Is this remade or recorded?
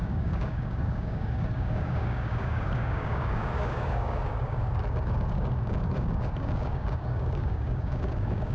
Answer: remade